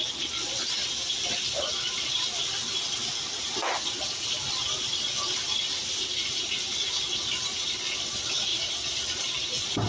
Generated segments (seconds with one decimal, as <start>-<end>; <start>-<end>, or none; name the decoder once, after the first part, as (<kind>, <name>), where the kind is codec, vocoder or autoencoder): none